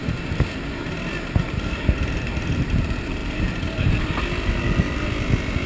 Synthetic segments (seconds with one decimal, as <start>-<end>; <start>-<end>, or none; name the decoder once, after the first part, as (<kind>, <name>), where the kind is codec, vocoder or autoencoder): 3.2-4.1 (vocoder, BigVGAN v2)